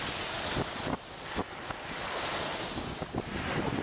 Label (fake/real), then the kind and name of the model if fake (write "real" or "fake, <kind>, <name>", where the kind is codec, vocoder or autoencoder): real